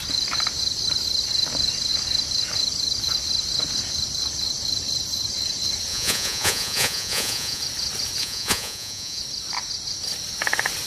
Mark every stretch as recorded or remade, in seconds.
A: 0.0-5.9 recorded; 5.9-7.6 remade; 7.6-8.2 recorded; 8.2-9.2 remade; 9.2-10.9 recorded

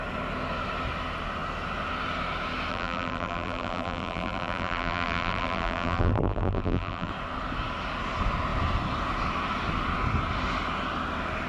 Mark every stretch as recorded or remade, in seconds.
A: 0.0-2.7 recorded; 2.7-7.1 remade; 7.1-11.5 recorded

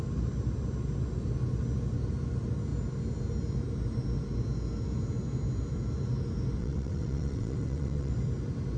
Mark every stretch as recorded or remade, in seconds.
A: 0.0-6.6 recorded; 6.6-8.1 remade; 8.1-8.8 recorded